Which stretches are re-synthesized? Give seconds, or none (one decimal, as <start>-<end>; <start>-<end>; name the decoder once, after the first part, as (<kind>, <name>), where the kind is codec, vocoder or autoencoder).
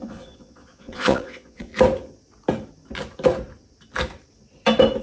0.0-1.7 (vocoder, Vocos)